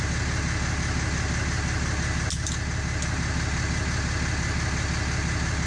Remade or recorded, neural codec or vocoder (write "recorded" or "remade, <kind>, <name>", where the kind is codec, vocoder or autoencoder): recorded